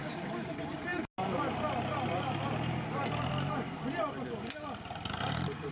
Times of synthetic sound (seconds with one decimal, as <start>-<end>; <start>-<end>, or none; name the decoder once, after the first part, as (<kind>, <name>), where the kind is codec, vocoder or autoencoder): none